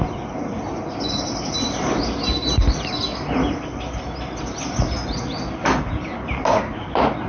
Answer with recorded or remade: recorded